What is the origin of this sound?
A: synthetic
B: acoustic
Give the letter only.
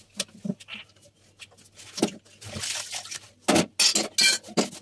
B